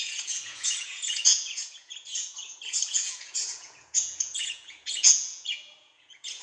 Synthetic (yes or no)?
yes